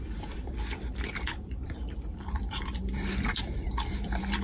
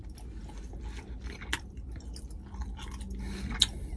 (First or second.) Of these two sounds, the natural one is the second